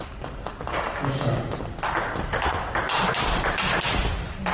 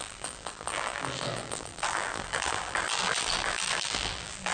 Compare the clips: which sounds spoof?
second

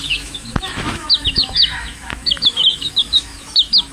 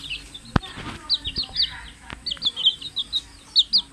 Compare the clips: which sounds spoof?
first